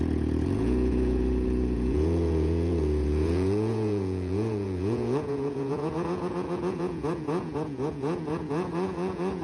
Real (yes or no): no